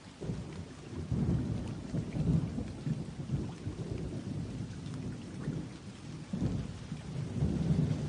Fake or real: real